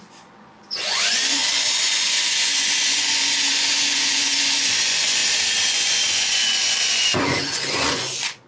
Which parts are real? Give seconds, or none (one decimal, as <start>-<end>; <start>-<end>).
5.2-5.7